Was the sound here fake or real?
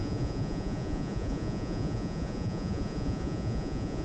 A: fake